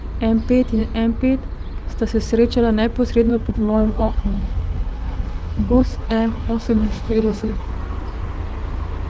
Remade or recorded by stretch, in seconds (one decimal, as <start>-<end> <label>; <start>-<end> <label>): 0.0-3.3 recorded; 3.3-7.7 remade; 7.7-9.1 recorded